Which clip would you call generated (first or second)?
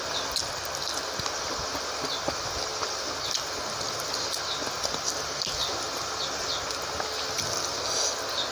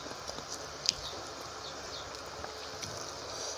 second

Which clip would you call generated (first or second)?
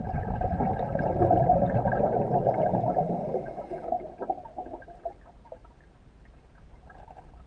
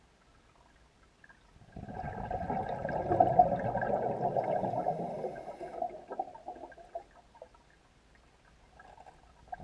first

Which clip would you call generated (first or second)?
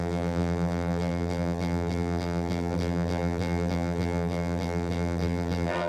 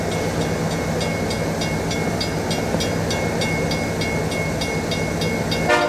first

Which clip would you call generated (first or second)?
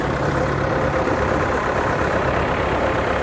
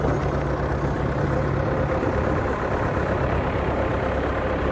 first